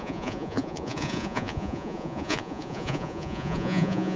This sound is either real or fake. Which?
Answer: fake